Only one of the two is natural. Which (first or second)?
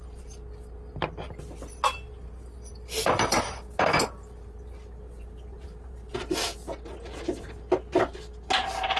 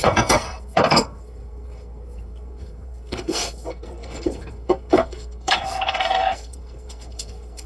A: first